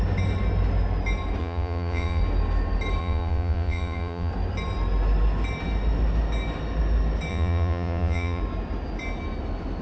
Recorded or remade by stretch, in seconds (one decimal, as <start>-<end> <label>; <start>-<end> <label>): 0.0-1.4 recorded; 1.4-2.2 remade; 2.2-3.0 recorded; 3.0-4.3 remade; 4.3-7.3 recorded; 7.3-8.4 remade; 8.4-9.8 recorded